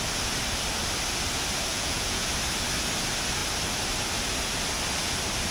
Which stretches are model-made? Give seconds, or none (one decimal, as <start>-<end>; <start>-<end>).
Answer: 1.7-2.3